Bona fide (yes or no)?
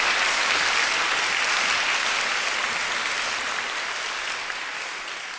yes